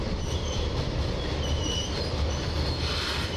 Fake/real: real